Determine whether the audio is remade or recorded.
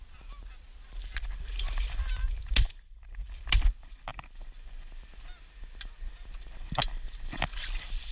recorded